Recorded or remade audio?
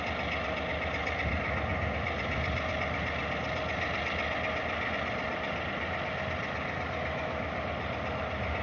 recorded